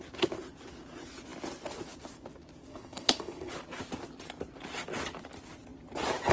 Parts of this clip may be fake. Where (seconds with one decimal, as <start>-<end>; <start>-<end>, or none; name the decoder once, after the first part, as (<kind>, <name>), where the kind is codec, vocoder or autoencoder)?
2.7-3.5 (codec, HILCodec)